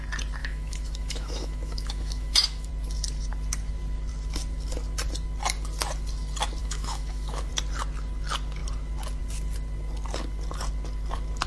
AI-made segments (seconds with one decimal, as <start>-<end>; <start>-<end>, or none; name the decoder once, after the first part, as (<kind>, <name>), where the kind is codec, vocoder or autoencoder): 0.4-2.7 (autoencoder, DAC-VAE); 6.6-7.5